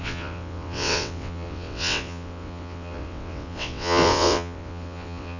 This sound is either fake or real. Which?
fake